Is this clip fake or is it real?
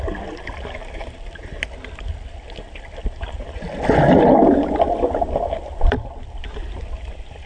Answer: real